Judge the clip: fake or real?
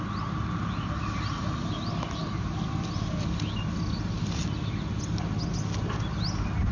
real